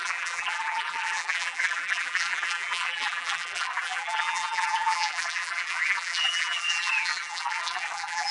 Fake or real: fake